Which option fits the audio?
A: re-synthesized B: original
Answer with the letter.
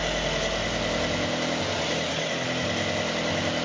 B